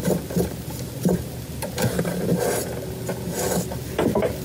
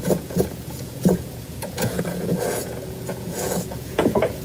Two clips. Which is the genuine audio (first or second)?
first